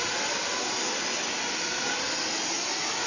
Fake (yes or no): no